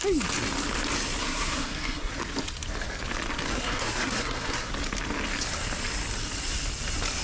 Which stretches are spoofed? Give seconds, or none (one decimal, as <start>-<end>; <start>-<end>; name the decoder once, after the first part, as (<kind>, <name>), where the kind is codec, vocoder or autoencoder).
1.2-2.1 (codec, SNAC); 3.5-4.7